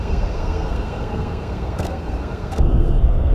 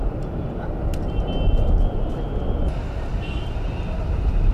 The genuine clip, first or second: second